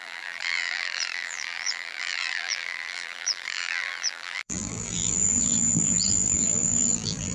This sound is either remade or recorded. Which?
remade